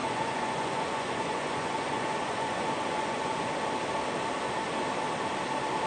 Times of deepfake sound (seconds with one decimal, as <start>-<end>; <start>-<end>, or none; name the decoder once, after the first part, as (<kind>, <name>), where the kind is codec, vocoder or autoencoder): 0.0-3.5 (vocoder, Vocos)